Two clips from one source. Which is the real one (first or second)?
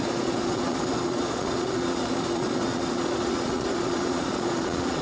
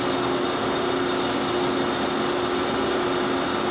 second